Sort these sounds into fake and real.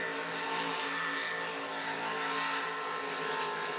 real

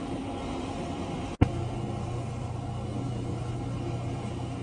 real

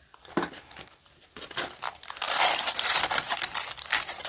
real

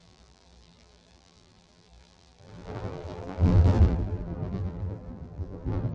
fake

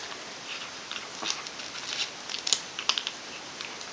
real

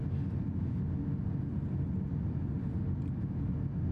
real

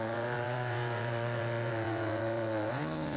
fake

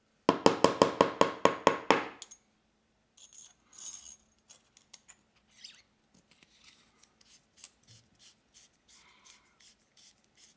real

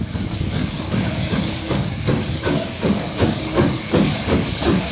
fake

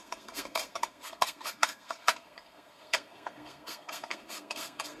fake